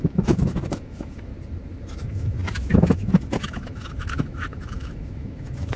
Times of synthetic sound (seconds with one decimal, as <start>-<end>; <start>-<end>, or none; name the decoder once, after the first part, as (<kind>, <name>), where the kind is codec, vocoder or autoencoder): 0.0-1.3 (autoencoder, DAC-VAE); 2.0-5.8